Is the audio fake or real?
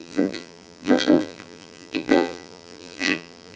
fake